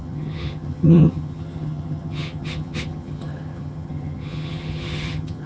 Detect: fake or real fake